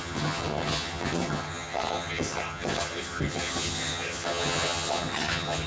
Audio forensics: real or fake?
fake